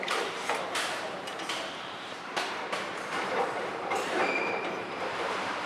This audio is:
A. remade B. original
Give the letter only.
A